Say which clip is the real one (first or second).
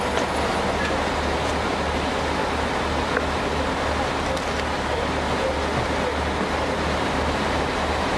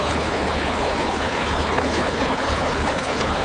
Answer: first